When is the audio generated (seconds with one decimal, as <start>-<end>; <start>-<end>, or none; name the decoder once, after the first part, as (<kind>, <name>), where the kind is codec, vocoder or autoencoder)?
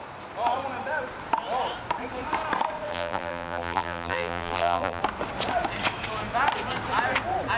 2.9-5.0 (vocoder, BigVGAN v2)